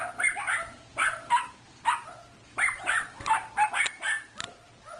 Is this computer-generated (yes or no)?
yes